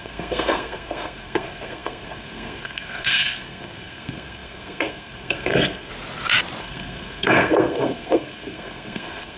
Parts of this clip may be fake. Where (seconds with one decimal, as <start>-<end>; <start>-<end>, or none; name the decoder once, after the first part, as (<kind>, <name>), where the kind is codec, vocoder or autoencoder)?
0.0-5.9 (codec, SNAC); 6.6-9.4